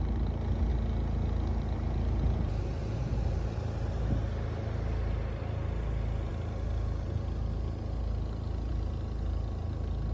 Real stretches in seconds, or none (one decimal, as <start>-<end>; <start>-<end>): 0.0-10.1